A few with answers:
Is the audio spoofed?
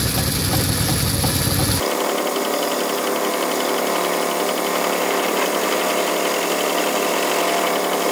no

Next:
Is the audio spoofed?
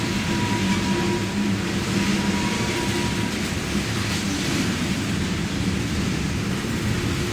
no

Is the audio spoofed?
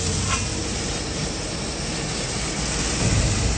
no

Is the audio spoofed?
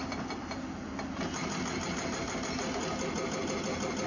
no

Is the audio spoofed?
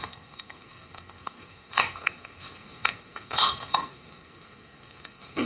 yes